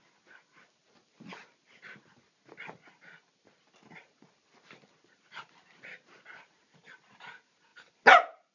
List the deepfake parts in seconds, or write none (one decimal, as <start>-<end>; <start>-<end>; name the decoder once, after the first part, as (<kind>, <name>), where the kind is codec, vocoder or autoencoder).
none